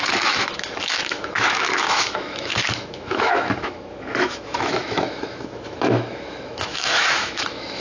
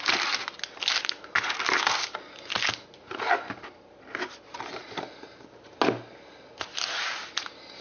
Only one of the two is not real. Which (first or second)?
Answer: first